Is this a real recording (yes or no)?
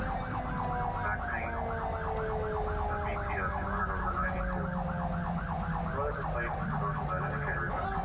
yes